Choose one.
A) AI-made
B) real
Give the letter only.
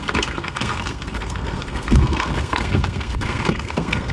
A